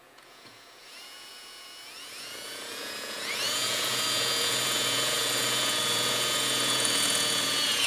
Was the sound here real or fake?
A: fake